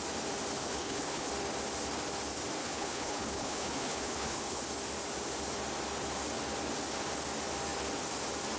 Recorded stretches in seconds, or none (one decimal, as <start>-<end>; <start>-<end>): 0.0-0.6; 1.3-2.6; 4.6-8.6